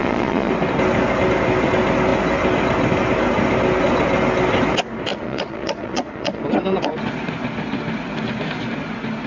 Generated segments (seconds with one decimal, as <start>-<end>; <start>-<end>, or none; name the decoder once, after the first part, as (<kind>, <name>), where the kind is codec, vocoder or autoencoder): 0.0-0.5 (vocoder, Vocos); 5.1-6.4